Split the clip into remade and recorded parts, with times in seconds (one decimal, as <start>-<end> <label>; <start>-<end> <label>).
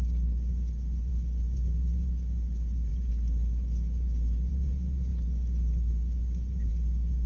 0.0-7.3 recorded